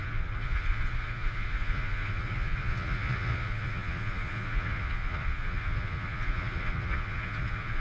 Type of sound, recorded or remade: remade